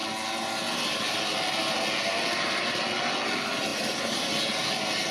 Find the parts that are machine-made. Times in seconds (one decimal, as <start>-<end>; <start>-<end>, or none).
3.7-4.3

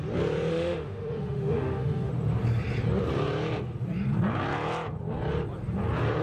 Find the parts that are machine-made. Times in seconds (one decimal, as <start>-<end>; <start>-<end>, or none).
0.5-2.1

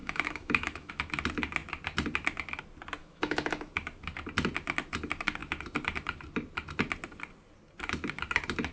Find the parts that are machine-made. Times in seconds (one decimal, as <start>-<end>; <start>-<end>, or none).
0.0-0.9; 3.0-3.7

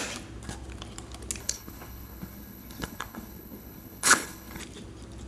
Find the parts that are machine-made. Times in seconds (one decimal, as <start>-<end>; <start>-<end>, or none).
1.4-4.6

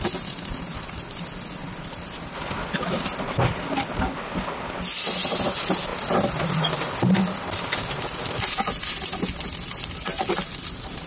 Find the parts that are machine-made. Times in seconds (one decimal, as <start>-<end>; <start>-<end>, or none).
none

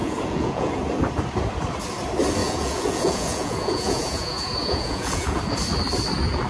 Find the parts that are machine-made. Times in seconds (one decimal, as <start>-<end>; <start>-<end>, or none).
0.0-0.8; 2.4-5.4